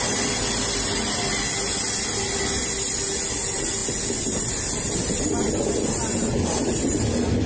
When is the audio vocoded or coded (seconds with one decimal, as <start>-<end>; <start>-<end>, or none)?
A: none